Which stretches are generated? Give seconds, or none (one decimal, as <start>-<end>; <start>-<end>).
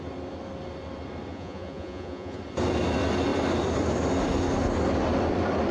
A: 1.3-2.4